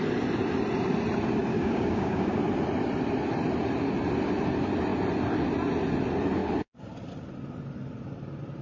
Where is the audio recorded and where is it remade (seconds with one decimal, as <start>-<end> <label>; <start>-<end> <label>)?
0.0-1.5 recorded; 1.5-2.4 remade; 2.4-8.6 recorded

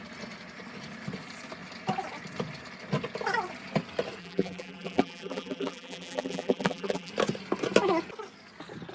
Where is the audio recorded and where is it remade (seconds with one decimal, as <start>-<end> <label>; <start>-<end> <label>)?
0.0-4.2 recorded; 4.2-7.1 remade; 7.1-8.9 recorded

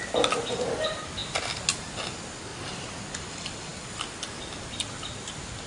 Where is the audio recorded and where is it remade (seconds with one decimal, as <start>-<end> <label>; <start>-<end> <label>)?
0.0-5.7 recorded

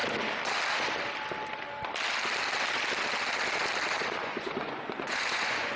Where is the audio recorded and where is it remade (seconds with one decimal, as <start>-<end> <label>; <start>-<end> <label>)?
0.0-4.2 recorded; 4.2-5.8 remade

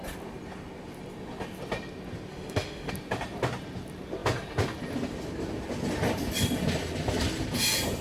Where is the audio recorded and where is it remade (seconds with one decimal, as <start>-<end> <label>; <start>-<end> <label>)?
0.0-2.3 recorded; 2.3-2.9 remade; 2.9-8.0 recorded

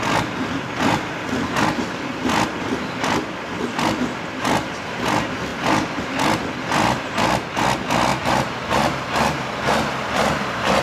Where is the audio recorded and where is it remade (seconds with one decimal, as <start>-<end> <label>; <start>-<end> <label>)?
0.0-8.1 recorded; 8.1-10.8 remade

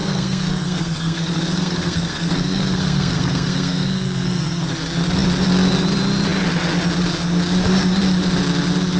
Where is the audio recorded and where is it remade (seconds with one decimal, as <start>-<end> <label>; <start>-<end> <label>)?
0.0-4.7 remade; 4.7-9.0 recorded